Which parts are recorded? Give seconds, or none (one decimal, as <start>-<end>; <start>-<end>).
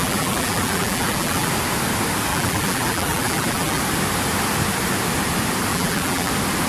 1.5-2.3; 3.8-5.7; 6.3-6.7